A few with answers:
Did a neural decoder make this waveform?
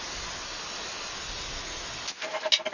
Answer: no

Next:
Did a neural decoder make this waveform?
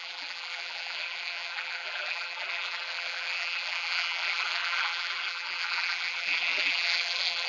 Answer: yes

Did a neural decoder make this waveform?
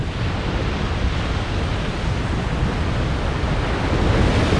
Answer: no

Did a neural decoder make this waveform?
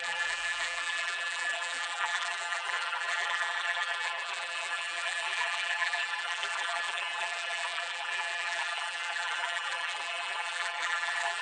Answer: yes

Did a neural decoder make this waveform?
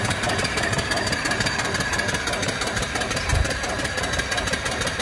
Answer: yes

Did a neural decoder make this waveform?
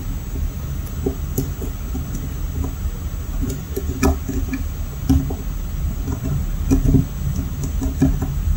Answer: no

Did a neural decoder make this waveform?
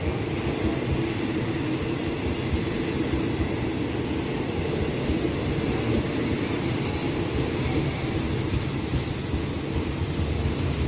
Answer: no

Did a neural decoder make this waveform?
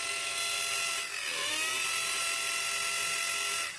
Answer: no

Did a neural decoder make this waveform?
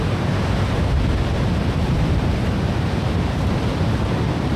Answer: yes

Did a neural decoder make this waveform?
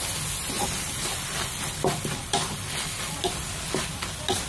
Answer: no